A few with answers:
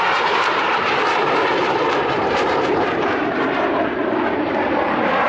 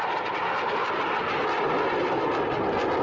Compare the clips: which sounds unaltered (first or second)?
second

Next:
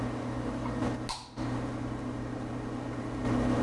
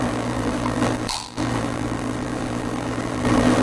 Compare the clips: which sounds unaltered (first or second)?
first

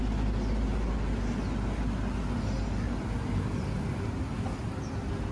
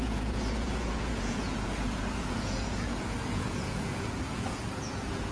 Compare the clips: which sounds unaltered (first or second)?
first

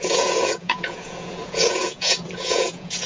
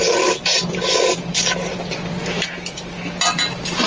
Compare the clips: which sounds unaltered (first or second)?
second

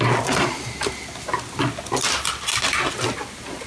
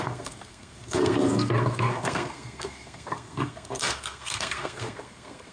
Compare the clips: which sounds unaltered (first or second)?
first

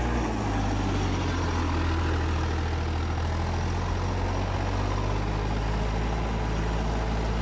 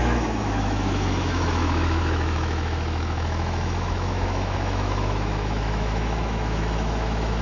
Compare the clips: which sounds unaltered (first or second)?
first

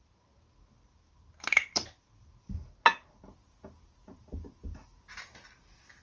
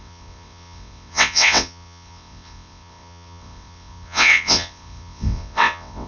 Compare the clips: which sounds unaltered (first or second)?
first